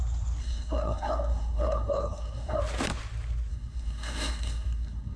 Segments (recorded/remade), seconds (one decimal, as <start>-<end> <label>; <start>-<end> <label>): 0.0-0.4 recorded; 0.4-2.6 remade; 2.6-3.5 recorded; 3.5-5.2 remade